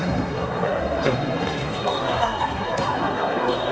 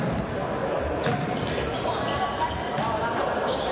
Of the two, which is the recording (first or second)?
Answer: second